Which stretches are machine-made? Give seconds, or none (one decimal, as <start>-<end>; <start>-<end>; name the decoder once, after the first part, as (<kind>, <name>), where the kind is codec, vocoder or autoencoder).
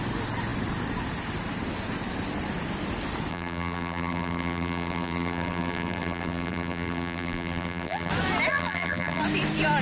3.3-8.1 (vocoder, BigVGAN v2); 8.5-9.2